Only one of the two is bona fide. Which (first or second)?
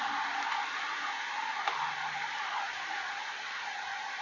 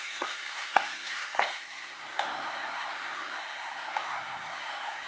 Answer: first